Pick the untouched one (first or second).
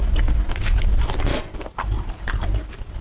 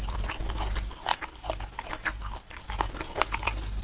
second